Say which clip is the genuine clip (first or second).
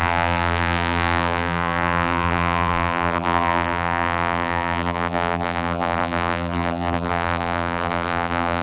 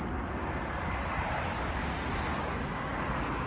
second